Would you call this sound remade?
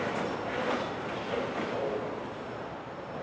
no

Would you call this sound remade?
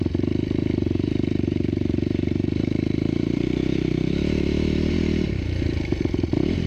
yes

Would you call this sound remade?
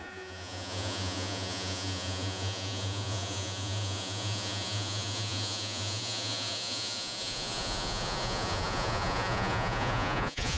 yes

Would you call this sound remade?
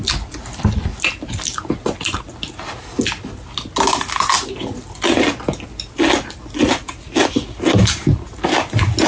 no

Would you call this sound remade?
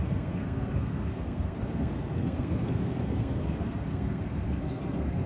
yes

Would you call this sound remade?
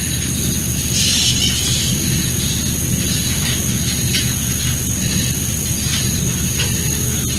no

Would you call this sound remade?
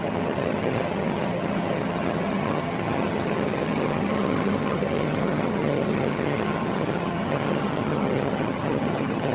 yes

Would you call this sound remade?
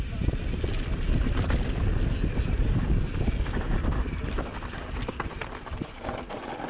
no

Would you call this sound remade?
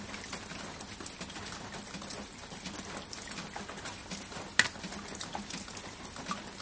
no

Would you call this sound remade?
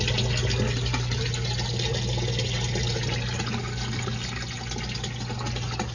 no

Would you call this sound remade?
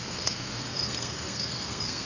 yes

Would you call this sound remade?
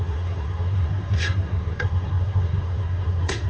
yes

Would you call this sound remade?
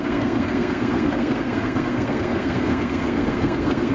yes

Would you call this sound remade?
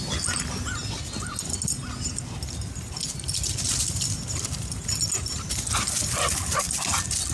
no